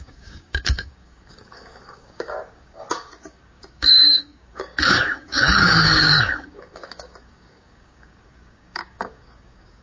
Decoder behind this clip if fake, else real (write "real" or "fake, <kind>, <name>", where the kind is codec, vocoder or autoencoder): fake, codec, DAC